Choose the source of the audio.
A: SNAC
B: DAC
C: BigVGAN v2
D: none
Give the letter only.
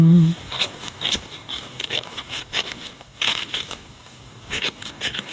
B